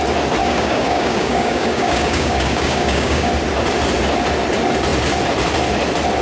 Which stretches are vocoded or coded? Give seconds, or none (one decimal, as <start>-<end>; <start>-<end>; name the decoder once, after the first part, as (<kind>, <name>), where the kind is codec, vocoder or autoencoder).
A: 0.4-3.3 (codec, DAC)